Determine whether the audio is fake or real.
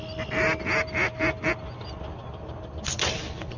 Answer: real